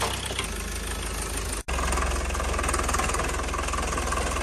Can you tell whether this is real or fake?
real